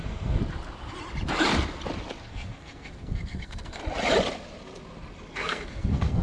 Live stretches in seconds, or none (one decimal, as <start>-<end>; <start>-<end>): 0.4-2.2; 3.8-5.3